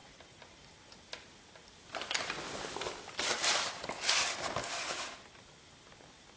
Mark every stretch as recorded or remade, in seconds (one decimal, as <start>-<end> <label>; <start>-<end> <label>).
0.0-6.4 recorded